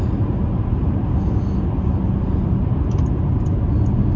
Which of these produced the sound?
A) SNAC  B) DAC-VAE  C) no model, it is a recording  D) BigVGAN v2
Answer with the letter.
C